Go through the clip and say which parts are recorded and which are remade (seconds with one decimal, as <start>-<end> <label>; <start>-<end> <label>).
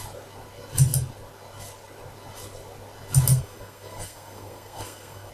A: 0.0-3.3 recorded; 3.3-5.3 remade